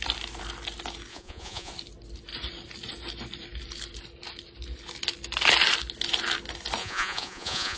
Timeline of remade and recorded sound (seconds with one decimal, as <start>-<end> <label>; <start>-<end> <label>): 0.0-1.1 recorded; 1.1-1.7 remade; 1.7-6.8 recorded; 6.8-7.8 remade